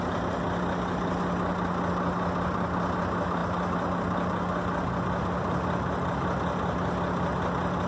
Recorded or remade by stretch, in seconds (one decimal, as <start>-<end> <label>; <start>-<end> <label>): 0.0-7.9 recorded